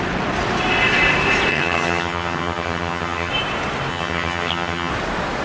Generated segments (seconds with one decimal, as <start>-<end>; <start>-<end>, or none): 1.5-3.3; 3.9-4.9